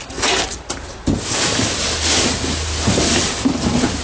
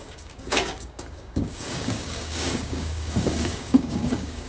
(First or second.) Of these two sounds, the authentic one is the first